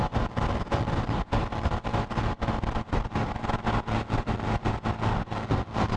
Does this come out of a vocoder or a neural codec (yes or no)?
no